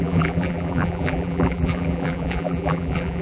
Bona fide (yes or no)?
no